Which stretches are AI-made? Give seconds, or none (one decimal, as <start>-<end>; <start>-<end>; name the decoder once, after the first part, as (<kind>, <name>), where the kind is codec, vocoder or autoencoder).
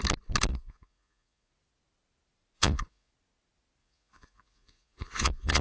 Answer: 0.5-1.5 (vocoder, Vocos); 2.6-3.1; 3.8-5.6